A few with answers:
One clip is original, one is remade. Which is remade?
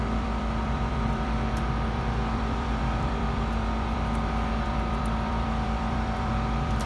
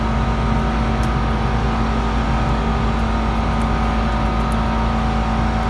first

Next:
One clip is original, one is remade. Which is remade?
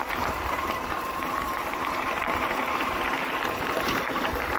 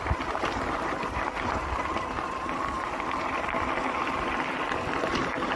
first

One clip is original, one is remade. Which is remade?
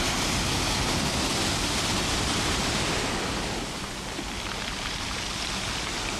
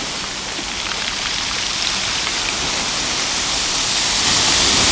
second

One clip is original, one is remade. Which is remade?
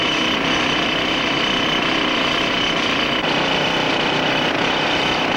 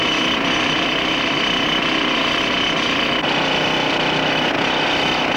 first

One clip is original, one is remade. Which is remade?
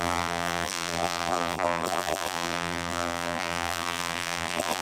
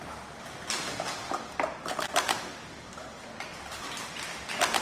first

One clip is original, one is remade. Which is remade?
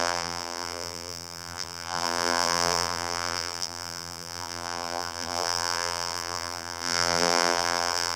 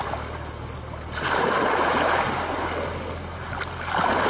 first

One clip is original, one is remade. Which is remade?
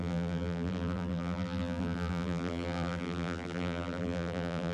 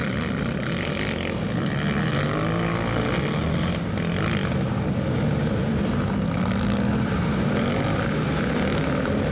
first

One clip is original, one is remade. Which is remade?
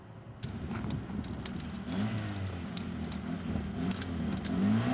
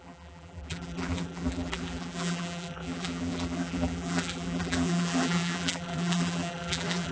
second